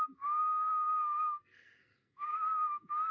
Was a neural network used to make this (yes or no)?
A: yes